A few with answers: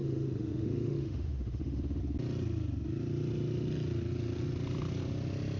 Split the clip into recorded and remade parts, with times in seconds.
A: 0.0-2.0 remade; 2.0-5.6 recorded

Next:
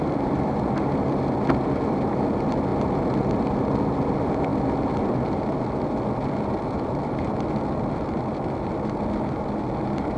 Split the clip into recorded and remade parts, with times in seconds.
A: 0.0-10.2 recorded

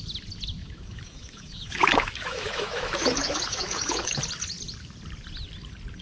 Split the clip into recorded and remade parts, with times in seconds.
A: 0.0-0.6 recorded; 0.6-4.2 remade; 4.2-6.0 recorded

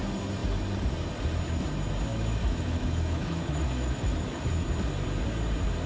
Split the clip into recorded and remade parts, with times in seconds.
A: 0.0-2.1 recorded; 2.1-4.5 remade; 4.5-5.9 recorded

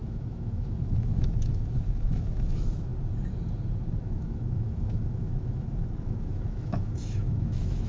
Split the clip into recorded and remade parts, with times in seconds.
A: 0.0-2.9 remade; 2.9-4.0 recorded; 4.0-7.9 remade

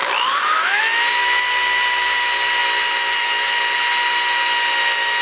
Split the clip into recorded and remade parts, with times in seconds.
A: 0.0-0.8 remade; 0.8-5.2 recorded

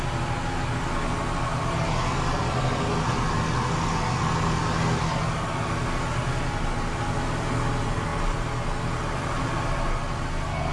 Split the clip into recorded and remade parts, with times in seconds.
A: 0.0-10.7 recorded

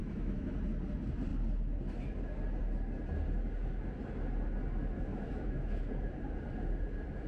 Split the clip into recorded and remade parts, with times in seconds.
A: 0.0-0.5 remade; 0.5-5.1 recorded; 5.1-5.9 remade; 5.9-7.3 recorded